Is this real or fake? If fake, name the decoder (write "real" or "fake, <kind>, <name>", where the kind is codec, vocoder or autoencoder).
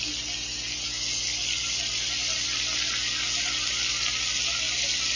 real